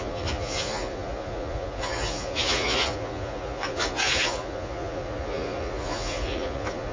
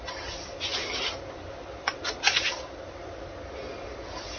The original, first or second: second